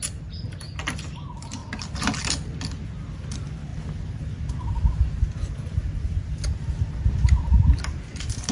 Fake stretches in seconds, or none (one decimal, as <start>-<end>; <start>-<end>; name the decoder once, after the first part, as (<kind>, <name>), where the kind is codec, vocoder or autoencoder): none